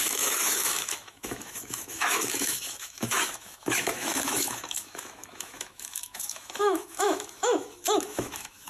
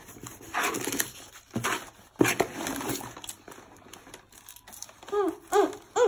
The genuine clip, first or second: second